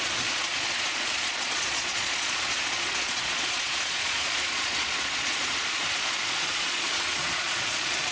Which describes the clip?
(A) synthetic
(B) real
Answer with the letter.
A